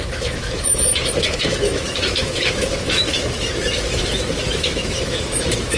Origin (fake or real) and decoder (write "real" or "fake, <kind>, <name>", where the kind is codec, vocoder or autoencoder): fake, autoencoder, DAC-VAE